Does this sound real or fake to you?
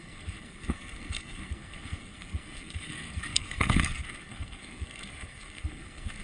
fake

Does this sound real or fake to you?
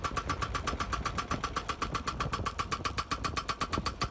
real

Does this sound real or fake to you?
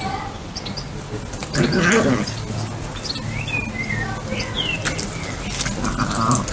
real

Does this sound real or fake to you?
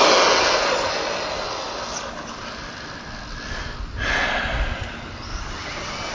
real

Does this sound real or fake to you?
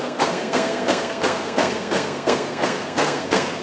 fake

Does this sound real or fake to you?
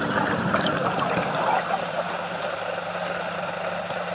real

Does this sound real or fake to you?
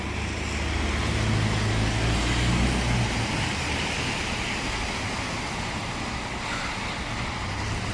real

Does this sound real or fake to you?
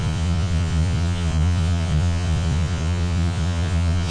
fake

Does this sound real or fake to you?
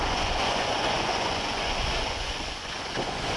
fake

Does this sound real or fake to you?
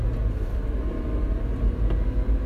real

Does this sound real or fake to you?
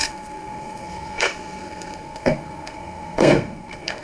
fake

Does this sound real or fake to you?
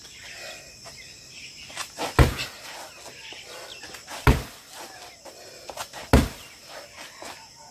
real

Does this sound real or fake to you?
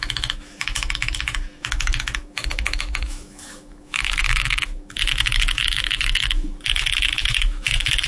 fake